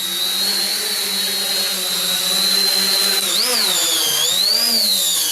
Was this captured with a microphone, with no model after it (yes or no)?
yes